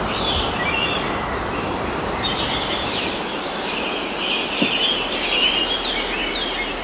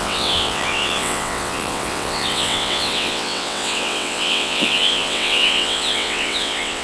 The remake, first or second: second